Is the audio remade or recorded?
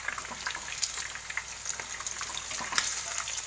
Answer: recorded